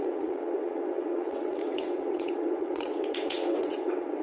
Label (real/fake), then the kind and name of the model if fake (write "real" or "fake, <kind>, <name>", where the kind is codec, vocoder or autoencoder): fake, vocoder, WaveNeXt